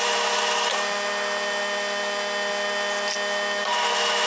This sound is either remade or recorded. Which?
recorded